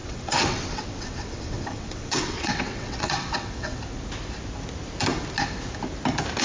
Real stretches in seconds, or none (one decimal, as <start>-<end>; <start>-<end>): 3.8-6.4